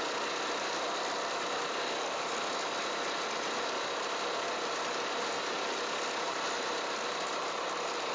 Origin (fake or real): real